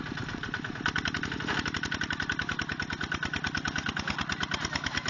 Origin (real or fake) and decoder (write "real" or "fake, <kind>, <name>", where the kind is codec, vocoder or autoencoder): real